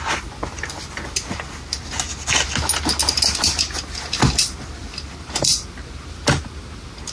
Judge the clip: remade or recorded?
recorded